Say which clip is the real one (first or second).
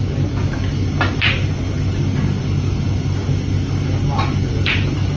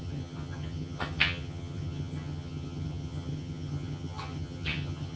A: first